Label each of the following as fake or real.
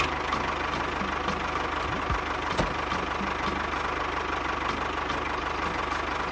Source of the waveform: real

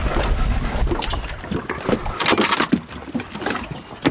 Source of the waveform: real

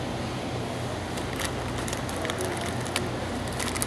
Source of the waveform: real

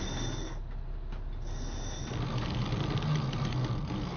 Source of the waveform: real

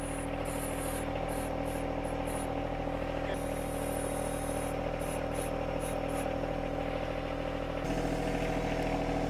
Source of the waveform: real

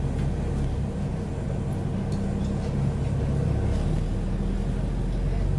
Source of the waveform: real